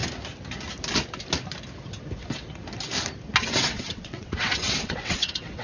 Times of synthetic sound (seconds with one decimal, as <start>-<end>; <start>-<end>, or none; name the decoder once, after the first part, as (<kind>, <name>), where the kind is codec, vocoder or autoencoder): 3.4-5.6 (vocoder, WaveNeXt)